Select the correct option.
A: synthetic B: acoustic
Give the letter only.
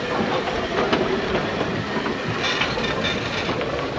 B